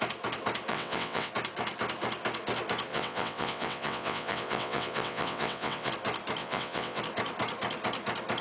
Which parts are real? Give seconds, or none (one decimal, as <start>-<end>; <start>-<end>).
0.0-0.7; 1.3-2.9; 5.9-6.4; 7.0-8.4